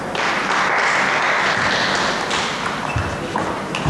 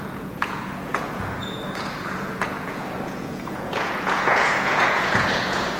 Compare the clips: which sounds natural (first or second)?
first